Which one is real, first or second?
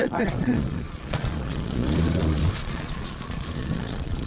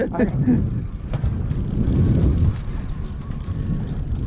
second